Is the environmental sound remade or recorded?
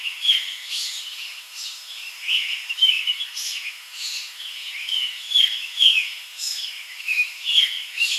remade